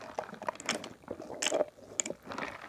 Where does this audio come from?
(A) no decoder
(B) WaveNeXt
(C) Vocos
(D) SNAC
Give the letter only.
A